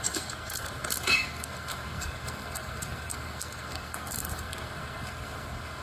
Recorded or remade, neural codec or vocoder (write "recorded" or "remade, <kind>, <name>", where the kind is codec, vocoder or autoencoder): remade, codec, SNAC